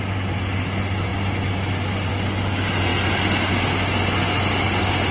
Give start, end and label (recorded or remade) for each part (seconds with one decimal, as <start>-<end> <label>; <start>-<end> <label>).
0.0-5.1 recorded